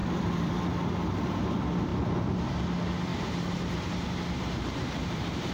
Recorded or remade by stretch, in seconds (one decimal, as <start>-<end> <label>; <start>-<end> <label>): 0.0-0.6 remade; 0.6-3.1 recorded; 3.1-5.5 remade